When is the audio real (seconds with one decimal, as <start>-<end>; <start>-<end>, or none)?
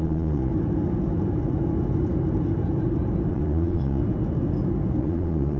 0.5-3.3; 4.0-5.0